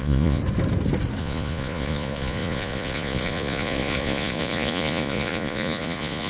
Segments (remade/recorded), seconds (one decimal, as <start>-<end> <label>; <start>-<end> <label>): 0.0-0.4 remade; 0.4-1.2 recorded; 1.2-6.3 remade